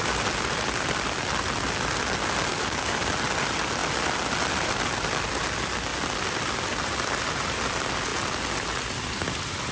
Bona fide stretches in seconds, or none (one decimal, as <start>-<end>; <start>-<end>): 0.0-2.5; 3.0-9.7